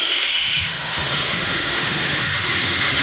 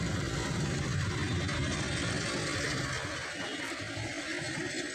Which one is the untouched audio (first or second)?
second